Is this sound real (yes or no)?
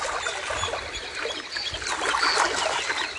yes